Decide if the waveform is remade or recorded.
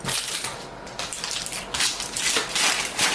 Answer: recorded